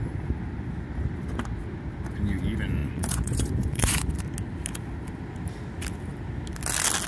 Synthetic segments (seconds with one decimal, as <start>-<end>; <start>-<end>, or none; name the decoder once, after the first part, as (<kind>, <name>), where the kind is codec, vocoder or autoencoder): 2.8-4.1 (vocoder, Vocos)